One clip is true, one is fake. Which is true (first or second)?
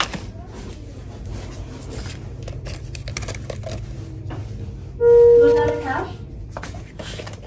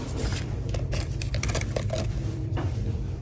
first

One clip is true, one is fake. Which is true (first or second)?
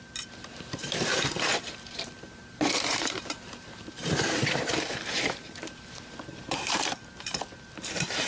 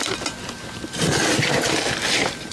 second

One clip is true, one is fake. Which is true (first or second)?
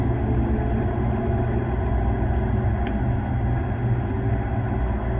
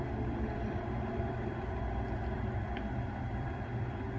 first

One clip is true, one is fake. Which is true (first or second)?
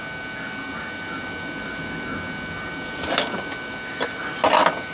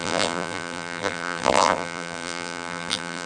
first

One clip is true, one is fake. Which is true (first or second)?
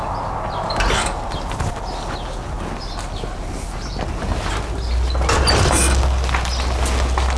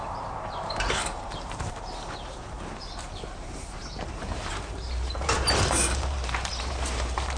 first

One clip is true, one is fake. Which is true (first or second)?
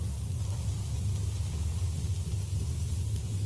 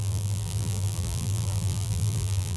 first